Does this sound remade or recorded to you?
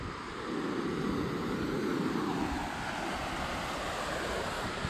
recorded